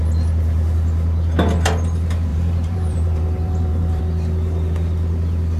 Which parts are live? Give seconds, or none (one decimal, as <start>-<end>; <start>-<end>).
0.0-2.3; 4.0-5.6